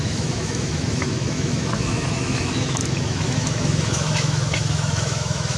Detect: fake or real fake